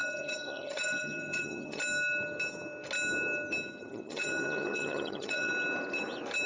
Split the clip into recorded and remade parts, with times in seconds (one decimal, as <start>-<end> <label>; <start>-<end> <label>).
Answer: 0.0-1.8 remade; 1.8-3.8 recorded; 3.8-5.5 remade; 5.5-6.5 recorded